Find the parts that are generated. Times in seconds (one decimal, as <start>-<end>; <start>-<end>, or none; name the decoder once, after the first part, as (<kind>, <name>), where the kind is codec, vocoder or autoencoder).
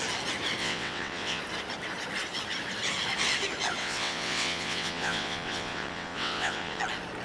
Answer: 0.6-1.4 (vocoder, WaveNeXt); 3.8-6.8